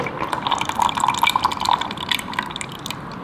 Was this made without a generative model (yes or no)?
yes